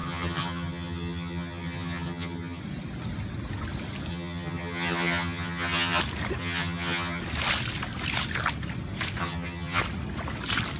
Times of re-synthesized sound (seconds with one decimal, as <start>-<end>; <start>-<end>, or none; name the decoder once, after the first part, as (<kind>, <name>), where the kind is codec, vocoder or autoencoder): 0.0-2.6 (vocoder, HiFi-GAN); 4.1-6.0; 6.4-7.2; 9.2-9.8